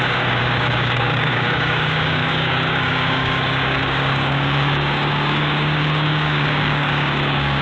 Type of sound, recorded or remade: remade